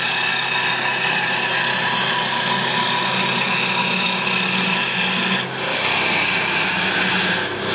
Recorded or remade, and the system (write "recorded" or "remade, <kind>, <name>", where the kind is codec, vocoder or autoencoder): recorded